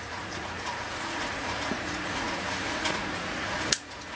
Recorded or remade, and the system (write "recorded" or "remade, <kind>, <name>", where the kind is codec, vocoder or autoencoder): remade, vocoder, Vocos